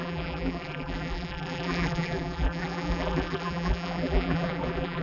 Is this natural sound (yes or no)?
no